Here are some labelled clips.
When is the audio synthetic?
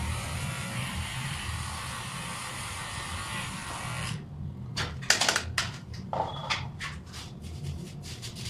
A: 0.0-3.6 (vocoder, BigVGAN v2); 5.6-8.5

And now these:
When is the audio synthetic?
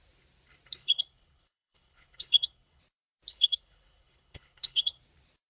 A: 0.8-2.8 (codec, HILCodec); 3.3-5.0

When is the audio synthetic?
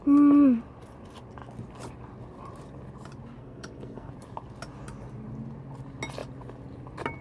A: 3.4-4.1 (codec, SNAC)